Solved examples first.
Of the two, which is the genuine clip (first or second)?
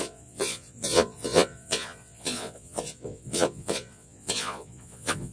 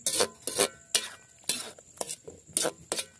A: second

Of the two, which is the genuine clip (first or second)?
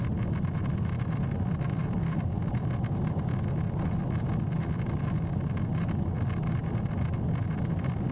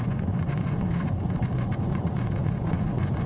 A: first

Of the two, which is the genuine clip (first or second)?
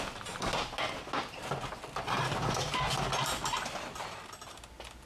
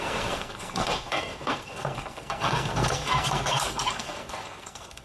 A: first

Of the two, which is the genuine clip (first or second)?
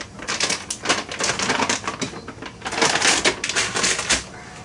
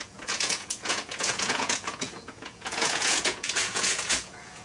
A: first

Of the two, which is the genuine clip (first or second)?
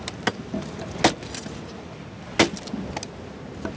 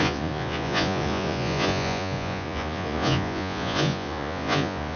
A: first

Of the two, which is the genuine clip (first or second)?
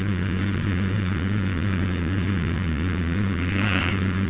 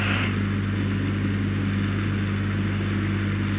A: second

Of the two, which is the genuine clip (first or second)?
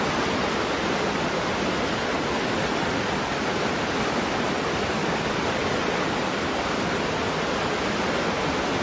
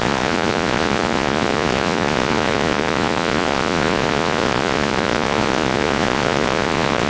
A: first